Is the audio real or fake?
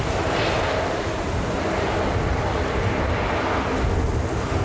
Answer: real